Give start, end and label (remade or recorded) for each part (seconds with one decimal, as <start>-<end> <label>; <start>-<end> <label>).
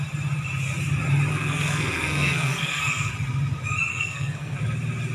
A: 0.0-1.3 recorded; 1.3-3.1 remade; 3.1-3.9 recorded; 3.9-4.6 remade; 4.6-5.1 recorded